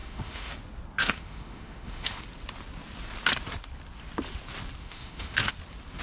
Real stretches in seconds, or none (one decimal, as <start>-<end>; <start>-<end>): 0.5-1.0; 2.2-4.8; 5.5-6.0